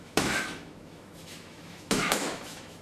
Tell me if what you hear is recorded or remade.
remade